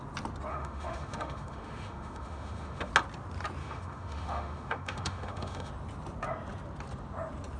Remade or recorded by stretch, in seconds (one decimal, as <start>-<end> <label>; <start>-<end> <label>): 0.0-0.5 recorded; 0.5-2.9 remade; 2.9-3.6 recorded; 3.6-5.7 remade; 5.7-7.6 recorded